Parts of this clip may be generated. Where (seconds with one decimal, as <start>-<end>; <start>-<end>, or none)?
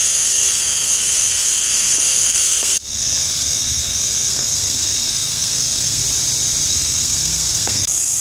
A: 0.0-6.0; 6.7-8.2